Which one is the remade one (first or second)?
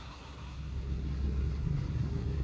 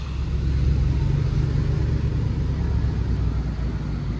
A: first